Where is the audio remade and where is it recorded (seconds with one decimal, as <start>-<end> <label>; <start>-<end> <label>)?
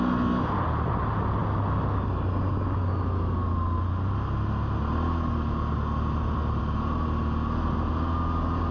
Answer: 0.0-8.7 recorded